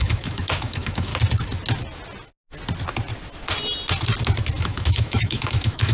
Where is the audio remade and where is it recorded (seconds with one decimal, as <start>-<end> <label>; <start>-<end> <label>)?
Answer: 0.0-1.1 remade; 1.1-4.6 recorded; 4.6-5.9 remade